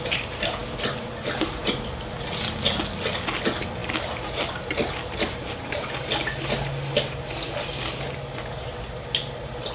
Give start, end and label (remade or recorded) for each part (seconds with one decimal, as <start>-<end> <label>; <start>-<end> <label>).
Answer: 0.0-9.7 recorded